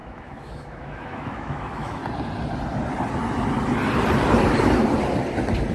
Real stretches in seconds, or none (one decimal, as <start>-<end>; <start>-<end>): 2.0-5.7